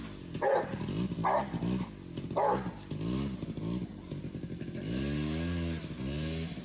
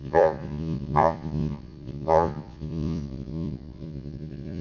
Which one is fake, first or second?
second